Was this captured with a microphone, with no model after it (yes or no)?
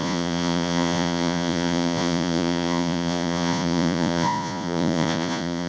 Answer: no